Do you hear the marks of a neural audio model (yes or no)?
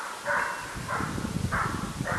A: no